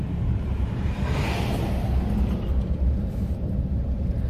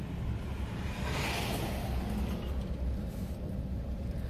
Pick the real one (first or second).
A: second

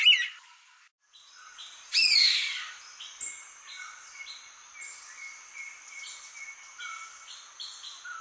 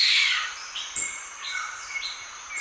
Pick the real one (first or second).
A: first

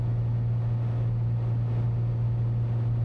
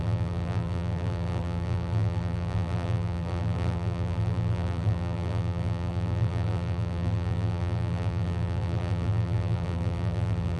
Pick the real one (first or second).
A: first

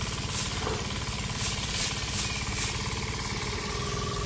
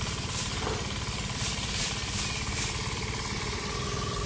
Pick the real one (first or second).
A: first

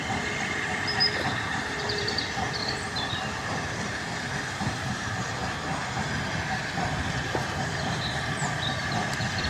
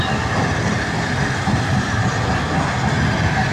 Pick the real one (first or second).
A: second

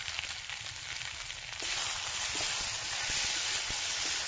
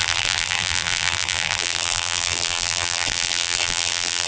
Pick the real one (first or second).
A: first